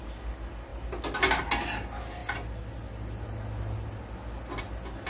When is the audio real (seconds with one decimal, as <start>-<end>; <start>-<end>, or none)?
0.0-5.1